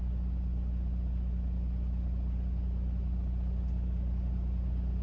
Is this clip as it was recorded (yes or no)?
yes